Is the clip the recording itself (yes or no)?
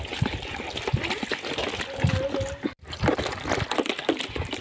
yes